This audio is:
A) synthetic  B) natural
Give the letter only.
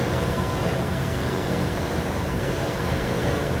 A